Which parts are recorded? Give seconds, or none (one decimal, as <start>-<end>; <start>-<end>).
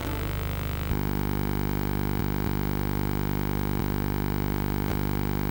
0.0-5.5